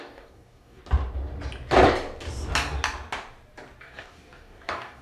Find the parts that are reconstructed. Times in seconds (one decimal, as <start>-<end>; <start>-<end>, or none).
0.0-0.8; 3.8-5.0